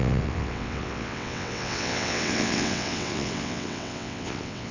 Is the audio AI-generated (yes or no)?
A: yes